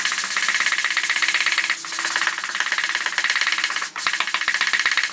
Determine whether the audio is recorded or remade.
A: recorded